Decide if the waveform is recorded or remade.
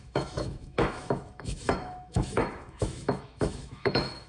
remade